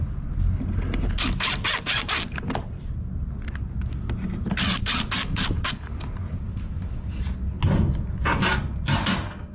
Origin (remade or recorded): recorded